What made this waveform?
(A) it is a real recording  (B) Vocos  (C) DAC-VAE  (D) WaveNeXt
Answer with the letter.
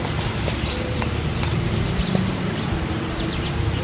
A